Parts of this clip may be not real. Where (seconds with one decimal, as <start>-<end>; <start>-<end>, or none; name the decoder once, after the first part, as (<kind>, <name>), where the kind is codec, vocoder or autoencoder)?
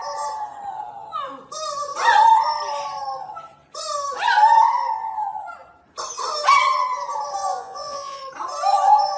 7.4-8.2 (vocoder, Vocos)